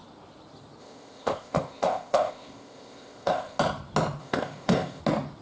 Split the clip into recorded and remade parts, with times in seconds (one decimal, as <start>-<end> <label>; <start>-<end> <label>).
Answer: 0.0-0.8 recorded; 0.8-3.6 remade; 3.6-4.2 recorded; 4.2-5.0 remade; 5.0-5.4 recorded